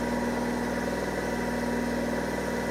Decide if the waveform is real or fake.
real